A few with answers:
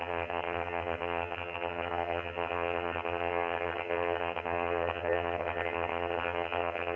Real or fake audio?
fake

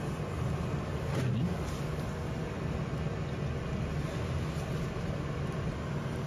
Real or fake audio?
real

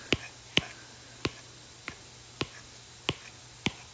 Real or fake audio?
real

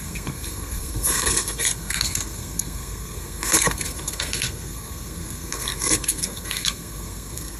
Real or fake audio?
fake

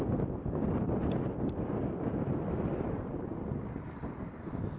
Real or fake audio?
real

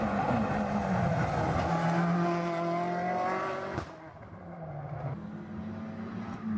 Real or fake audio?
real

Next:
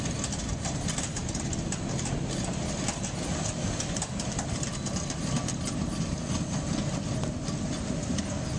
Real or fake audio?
real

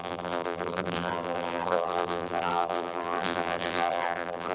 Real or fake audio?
fake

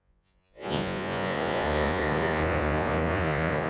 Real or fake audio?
fake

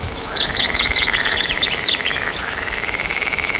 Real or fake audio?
fake